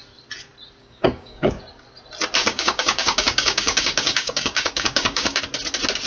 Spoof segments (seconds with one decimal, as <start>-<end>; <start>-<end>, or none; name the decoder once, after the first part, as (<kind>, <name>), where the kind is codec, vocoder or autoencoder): 0.8-1.6 (codec, DAC); 2.4-5.4